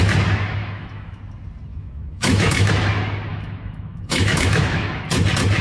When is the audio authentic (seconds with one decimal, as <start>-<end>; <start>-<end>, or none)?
0.0-0.6; 1.2-1.7; 2.7-3.3; 5.0-5.6